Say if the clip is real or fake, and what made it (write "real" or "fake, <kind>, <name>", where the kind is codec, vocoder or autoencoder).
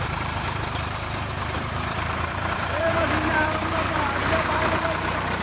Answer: fake, vocoder, BigVGAN v2